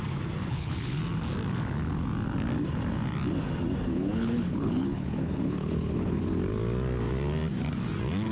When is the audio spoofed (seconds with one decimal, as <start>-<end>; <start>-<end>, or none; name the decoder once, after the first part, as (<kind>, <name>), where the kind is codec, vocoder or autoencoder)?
0.4-1.0 (codec, HILCodec); 3.9-6.2

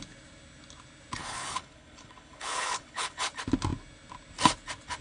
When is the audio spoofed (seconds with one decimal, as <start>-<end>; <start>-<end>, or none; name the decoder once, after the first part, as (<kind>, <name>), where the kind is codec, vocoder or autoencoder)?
1.2-3.3 (codec, HILCodec)